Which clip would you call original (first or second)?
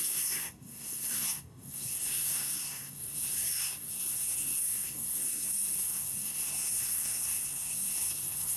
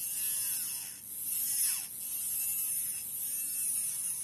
second